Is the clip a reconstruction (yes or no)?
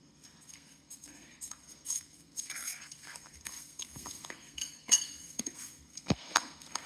yes